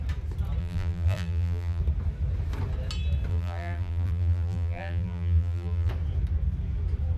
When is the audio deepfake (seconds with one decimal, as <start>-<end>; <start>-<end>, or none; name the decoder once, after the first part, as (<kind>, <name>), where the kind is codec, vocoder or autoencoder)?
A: 0.6-1.8 (vocoder, BigVGAN v2); 3.3-5.9